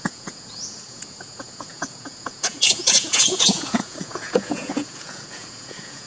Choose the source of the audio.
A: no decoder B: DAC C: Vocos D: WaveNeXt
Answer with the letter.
C